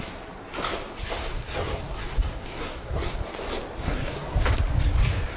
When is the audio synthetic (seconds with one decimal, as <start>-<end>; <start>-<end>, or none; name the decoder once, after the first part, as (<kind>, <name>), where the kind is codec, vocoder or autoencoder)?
1.3-3.2 (codec, SNAC); 3.8-4.4